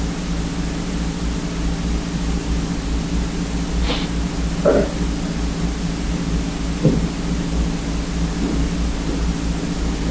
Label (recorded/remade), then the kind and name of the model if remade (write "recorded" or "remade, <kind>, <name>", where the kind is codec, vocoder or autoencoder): recorded